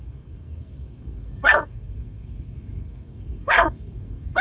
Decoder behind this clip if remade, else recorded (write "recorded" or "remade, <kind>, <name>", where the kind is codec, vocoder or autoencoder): remade, codec, SNAC